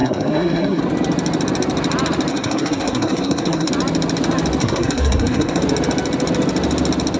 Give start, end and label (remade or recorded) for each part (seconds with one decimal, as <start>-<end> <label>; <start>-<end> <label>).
0.0-0.8 remade; 0.8-2.3 recorded; 2.3-3.7 remade; 3.7-4.6 recorded; 4.6-5.6 remade; 5.6-7.2 recorded